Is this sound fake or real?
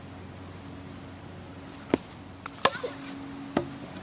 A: real